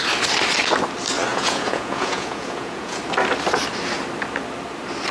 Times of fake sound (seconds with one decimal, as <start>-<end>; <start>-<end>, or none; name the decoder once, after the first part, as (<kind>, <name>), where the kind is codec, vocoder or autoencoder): 1.3-3.0 (vocoder, Vocos)